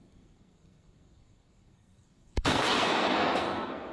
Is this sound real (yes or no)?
no